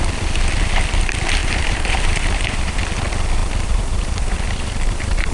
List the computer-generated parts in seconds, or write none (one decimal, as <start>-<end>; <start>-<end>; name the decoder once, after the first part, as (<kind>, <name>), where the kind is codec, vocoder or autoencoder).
1.4-2.8 (vocoder, BigVGAN v2); 3.4-5.3